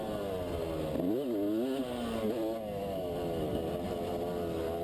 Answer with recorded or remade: recorded